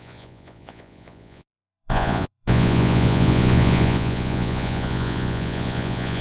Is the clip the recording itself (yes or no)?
no